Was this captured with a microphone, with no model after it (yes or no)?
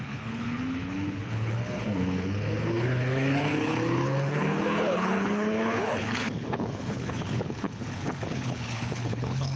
no